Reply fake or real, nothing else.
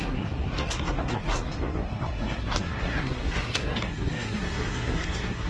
fake